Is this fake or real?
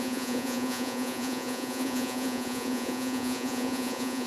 fake